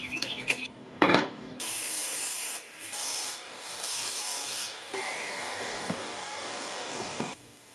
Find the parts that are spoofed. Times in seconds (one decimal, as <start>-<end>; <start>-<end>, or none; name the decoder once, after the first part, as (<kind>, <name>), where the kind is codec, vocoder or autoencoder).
0.0-7.7 (codec, DAC)